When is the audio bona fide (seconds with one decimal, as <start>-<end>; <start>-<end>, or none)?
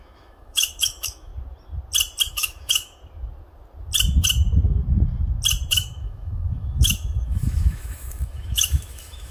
1.3-2.3; 3.0-5.7